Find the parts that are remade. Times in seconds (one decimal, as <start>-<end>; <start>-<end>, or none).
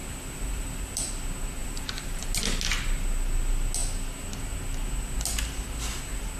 0.0-1.1; 1.6-2.4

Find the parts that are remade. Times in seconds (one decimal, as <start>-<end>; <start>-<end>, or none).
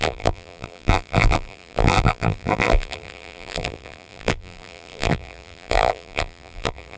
0.0-7.0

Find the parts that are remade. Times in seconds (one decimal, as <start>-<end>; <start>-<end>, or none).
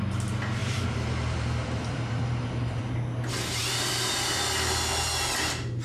0.6-2.8; 3.6-4.1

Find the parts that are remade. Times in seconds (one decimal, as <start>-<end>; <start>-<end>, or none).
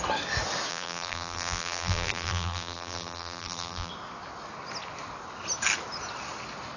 0.7-3.9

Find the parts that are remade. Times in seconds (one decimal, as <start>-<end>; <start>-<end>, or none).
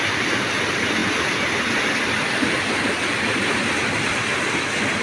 none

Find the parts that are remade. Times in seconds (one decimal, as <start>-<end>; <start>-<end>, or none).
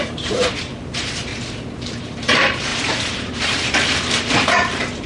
0.0-1.3; 1.9-5.1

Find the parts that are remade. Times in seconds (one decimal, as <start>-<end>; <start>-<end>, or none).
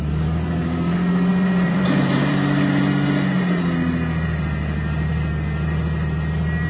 1.3-2.3